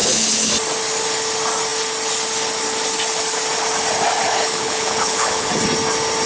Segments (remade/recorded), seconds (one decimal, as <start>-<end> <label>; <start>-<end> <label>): 0.0-0.5 remade; 0.5-4.4 recorded; 4.4-5.5 remade; 5.5-6.3 recorded